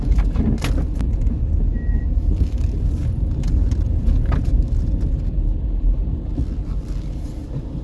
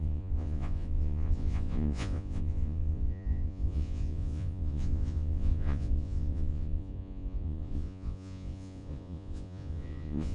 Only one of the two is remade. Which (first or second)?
second